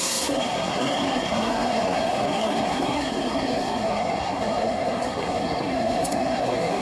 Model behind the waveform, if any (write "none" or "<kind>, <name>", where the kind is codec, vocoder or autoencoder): codec, SNAC